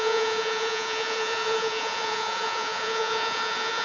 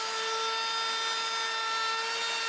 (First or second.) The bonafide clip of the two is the second